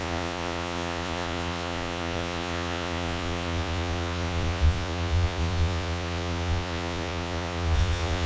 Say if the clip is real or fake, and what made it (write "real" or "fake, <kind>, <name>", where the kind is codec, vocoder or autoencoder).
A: fake, vocoder, Vocos